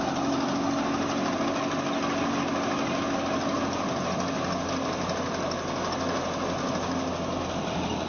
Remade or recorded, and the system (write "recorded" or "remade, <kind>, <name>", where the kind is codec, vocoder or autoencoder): recorded